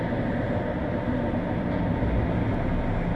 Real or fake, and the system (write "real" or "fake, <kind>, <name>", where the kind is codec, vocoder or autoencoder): real